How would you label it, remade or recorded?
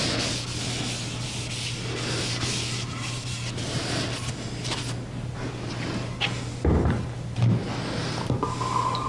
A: recorded